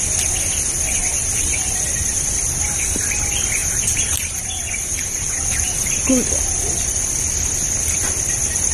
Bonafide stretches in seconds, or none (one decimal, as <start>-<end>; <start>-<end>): 0.0-3.6; 6.1-8.7

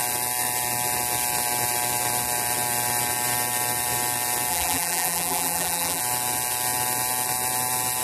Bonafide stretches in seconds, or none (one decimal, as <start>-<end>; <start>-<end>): 0.0-4.5; 6.0-8.0

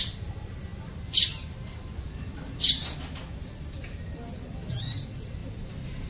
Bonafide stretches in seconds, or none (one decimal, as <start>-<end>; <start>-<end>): 0.0-5.4

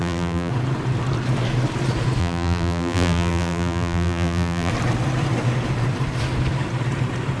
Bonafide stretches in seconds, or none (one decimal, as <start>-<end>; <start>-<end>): 0.5-2.2; 4.7-7.4

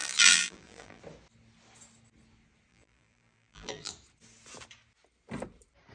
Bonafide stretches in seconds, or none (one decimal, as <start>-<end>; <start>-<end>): 1.0-2.7; 3.9-5.9

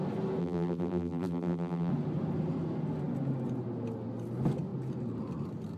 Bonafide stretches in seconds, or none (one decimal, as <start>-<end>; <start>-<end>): 0.0-0.4; 1.9-5.8

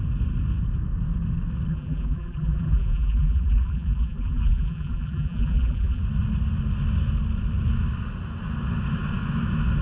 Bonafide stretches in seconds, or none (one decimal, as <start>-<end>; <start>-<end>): 0.0-1.7; 6.0-9.8

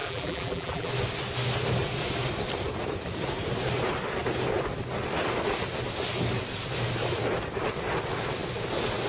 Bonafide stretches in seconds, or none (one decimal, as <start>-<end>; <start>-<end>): 0.9-9.1